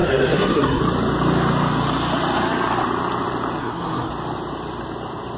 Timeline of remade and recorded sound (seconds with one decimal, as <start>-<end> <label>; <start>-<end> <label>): 0.0-0.8 remade; 0.8-3.6 recorded; 3.6-4.1 remade; 4.1-5.4 recorded